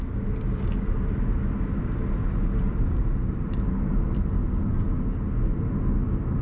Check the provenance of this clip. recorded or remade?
recorded